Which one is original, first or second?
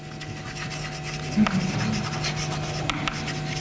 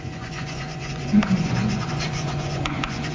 first